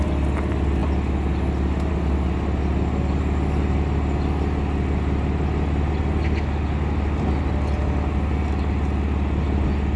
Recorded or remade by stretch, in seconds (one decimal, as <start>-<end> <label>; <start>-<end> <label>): 0.0-10.0 recorded

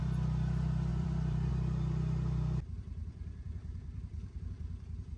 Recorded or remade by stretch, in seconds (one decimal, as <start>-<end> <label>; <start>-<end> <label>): 0.0-0.9 recorded; 0.9-1.5 remade; 1.5-3.0 recorded; 3.0-4.5 remade; 4.5-5.2 recorded

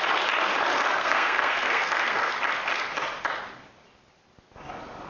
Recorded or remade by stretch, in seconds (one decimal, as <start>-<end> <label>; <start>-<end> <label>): 0.0-1.0 recorded; 1.0-2.3 remade; 2.3-5.1 recorded

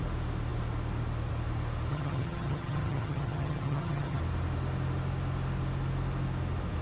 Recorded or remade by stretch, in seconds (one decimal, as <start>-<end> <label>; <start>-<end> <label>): 0.0-1.9 recorded; 1.9-4.2 remade; 4.2-6.8 recorded

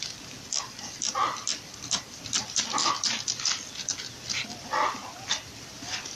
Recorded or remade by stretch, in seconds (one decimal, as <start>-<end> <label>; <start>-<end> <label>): 0.0-2.8 remade; 2.8-4.3 recorded; 4.3-6.2 remade

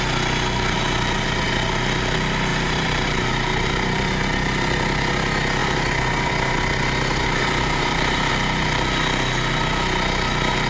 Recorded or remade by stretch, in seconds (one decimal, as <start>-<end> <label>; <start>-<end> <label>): 0.0-2.5 recorded; 2.5-4.1 remade; 4.1-5.6 recorded; 5.6-8.3 remade; 8.3-10.7 recorded